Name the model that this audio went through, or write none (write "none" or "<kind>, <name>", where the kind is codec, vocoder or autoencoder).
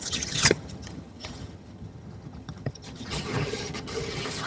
vocoder, HiFi-GAN